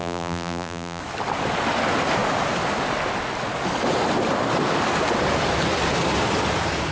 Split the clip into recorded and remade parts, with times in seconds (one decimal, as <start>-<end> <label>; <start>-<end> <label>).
0.0-1.0 remade; 1.0-6.9 recorded